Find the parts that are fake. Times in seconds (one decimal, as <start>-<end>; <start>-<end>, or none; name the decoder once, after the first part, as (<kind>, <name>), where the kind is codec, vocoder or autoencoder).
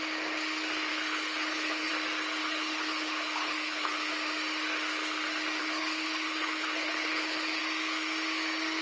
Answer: 0.9-1.9 (codec, HILCodec); 2.4-4.1; 5.6-7.6